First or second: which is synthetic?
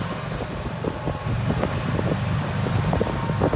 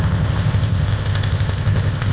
second